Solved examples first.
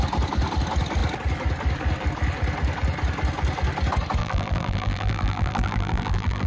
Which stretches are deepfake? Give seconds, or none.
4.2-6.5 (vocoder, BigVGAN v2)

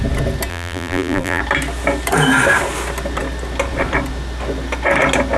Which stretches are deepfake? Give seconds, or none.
0.5-1.4 (vocoder, BigVGAN v2)

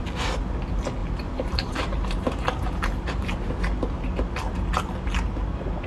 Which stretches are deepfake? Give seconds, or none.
1.0-3.6 (vocoder, BigVGAN v2)

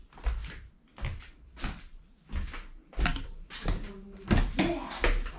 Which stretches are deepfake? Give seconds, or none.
0.4-2.2 (vocoder, BigVGAN v2); 3.1-3.7

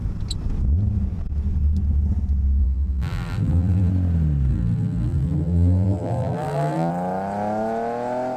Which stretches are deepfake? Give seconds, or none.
2.6-3.9 (vocoder, BigVGAN v2); 4.5-6.9

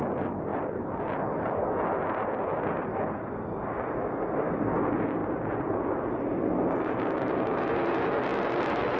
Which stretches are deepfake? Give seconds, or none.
0.0-0.5 (vocoder, BigVGAN v2); 1.8-5.2; 5.9-9.0